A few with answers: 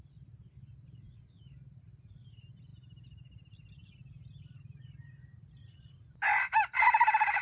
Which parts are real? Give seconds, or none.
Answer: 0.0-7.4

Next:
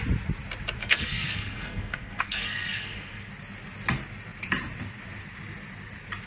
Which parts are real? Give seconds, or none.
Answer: 0.0-0.8; 3.3-6.3

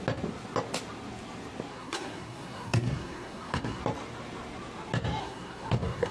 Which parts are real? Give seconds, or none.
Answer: 0.0-1.7; 3.8-5.2

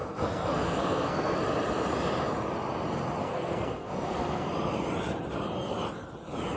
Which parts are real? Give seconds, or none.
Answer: 1.4-3.2; 4.5-6.6

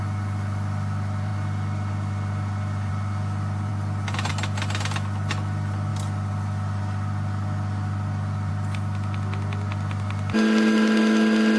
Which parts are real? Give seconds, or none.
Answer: 0.0-11.6

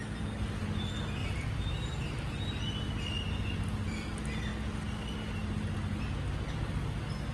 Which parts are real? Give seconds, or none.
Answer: 0.0-1.2; 2.3-7.3

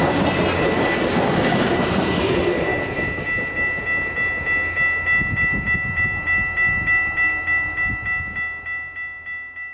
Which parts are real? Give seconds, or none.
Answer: 0.0-9.7